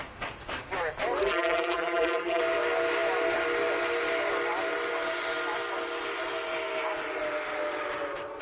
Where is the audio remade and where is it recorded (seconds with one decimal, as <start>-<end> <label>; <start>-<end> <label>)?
0.0-1.2 recorded; 1.2-2.4 remade; 2.4-8.4 recorded

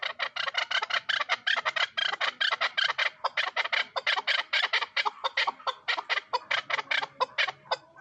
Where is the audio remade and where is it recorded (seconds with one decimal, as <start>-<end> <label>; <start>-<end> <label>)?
0.0-6.6 remade; 6.6-8.0 recorded

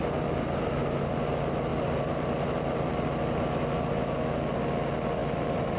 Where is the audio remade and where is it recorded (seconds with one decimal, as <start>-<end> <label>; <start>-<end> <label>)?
0.0-1.7 recorded; 1.7-2.9 remade; 2.9-5.2 recorded; 5.2-5.8 remade

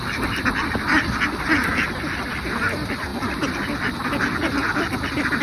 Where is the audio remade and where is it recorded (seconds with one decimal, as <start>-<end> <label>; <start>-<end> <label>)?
0.0-5.4 recorded

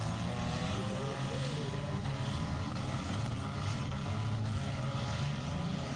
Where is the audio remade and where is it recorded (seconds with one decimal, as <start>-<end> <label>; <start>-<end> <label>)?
0.0-0.6 recorded; 0.6-4.0 remade; 4.0-4.8 recorded; 4.8-6.0 remade

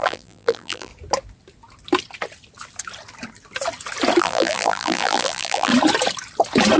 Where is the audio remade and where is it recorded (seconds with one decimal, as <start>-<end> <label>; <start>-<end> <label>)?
0.0-0.9 remade; 0.9-4.2 recorded; 4.2-5.7 remade; 5.7-6.8 recorded

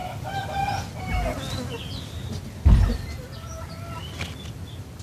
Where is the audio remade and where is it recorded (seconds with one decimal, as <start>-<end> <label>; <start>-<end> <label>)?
0.0-5.0 remade

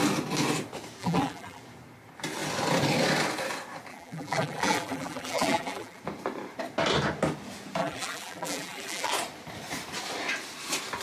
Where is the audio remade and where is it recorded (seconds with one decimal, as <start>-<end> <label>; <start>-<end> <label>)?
0.0-1.0 recorded; 1.0-1.6 remade; 1.6-3.9 recorded; 3.9-6.0 remade; 6.0-7.8 recorded; 7.8-9.1 remade; 9.1-11.0 recorded